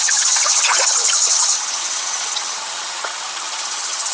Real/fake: fake